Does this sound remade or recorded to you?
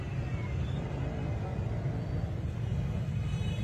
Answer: recorded